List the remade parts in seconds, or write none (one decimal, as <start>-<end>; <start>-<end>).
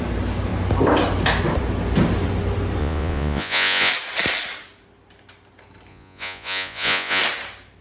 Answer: 2.8-3.9; 5.9-7.2